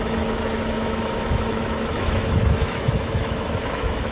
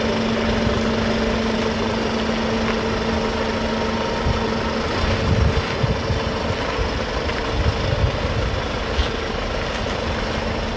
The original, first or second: second